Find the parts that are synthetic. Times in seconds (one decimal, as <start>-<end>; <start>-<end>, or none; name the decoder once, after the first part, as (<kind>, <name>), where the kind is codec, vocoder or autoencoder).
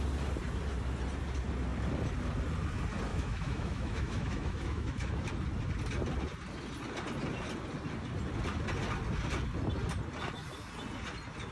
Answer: 3.1-5.3 (autoencoder, DAC-VAE)